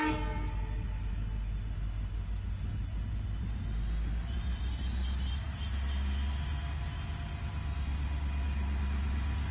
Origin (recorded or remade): recorded